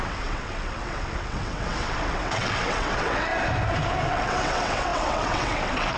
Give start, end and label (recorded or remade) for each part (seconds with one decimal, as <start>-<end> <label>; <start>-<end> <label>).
0.0-3.3 remade; 3.3-4.1 recorded; 4.1-6.0 remade